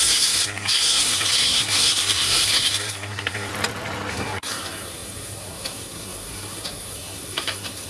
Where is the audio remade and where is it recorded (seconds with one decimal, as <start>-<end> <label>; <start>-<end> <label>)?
0.0-3.5 remade; 3.5-4.1 recorded; 4.1-7.9 remade